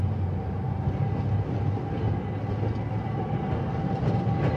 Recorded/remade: recorded